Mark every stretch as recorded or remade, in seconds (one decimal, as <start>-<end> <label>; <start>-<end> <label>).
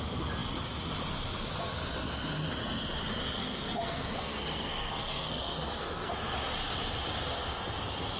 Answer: 0.0-3.4 recorded; 3.4-6.1 remade; 6.1-8.2 recorded